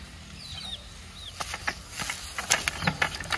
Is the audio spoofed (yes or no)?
no